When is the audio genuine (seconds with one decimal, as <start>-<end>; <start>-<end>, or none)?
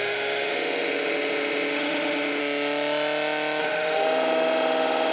2.4-3.6